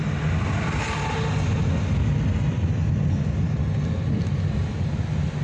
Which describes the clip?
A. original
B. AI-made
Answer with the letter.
A